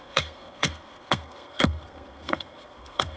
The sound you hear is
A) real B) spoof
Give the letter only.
B